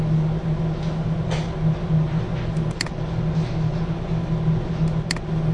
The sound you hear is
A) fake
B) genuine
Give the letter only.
B